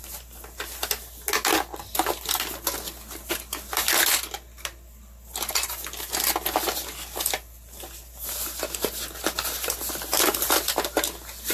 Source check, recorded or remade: recorded